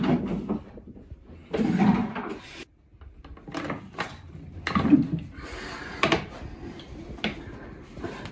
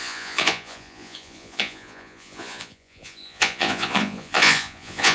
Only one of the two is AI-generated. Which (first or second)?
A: second